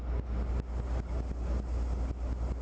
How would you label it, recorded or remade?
recorded